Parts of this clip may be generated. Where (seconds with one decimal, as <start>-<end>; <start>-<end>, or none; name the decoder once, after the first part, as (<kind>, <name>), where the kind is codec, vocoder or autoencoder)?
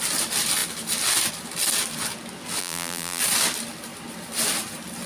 2.6-3.2 (vocoder, BigVGAN v2)